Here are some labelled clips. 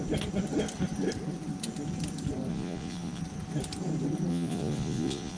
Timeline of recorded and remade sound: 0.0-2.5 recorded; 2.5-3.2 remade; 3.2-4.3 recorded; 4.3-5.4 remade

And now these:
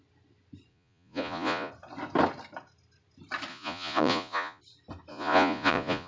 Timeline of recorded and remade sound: 0.0-0.7 recorded; 0.7-1.7 remade; 1.7-3.5 recorded; 3.5-4.6 remade; 4.6-5.1 recorded; 5.1-6.1 remade

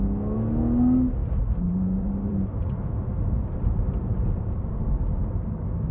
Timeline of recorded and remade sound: 0.0-1.2 recorded; 1.2-4.7 remade; 4.7-5.9 recorded

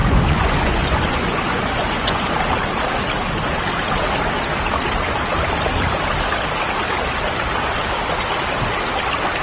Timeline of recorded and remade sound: 0.0-2.2 remade; 2.2-9.4 recorded

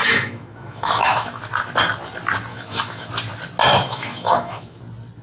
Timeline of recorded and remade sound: 0.0-1.4 remade; 1.4-2.5 recorded; 2.5-3.1 remade; 3.1-3.7 recorded; 3.7-4.8 remade; 4.8-5.2 recorded

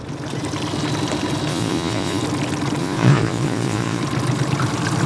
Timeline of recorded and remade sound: 0.0-1.5 recorded; 1.5-2.2 remade; 2.2-2.8 recorded; 2.8-4.0 remade; 4.0-5.1 recorded

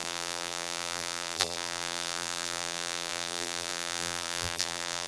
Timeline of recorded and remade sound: 0.0-5.1 remade

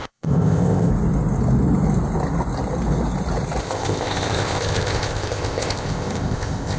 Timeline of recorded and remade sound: 0.0-0.9 remade; 0.9-3.6 recorded; 3.6-6.8 remade